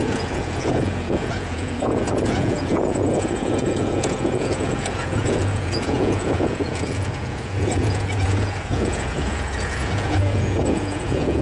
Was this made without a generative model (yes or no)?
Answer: no